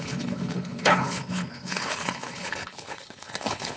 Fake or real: fake